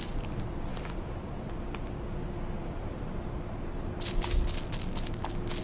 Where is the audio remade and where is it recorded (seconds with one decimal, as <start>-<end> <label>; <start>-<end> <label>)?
0.0-5.6 recorded